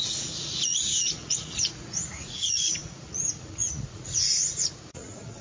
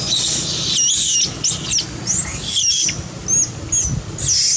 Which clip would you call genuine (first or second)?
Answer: second